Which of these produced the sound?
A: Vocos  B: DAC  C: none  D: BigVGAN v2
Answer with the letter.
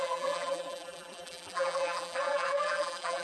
D